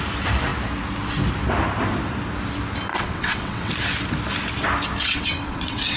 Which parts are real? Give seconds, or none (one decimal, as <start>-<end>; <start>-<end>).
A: 0.0-2.9; 3.7-5.0